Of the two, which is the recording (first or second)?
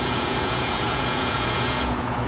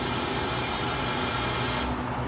second